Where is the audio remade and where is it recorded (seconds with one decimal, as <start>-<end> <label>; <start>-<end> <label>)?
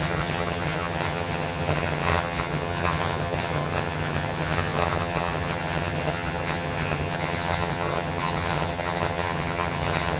0.0-10.2 remade